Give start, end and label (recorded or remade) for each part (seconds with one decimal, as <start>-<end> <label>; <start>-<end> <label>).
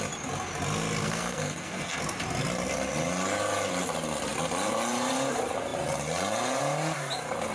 0.0-1.0 recorded; 1.0-2.0 remade; 2.0-7.5 recorded